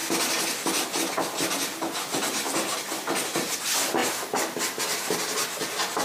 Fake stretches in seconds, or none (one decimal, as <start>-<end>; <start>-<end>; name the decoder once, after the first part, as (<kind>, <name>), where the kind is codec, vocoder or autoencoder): none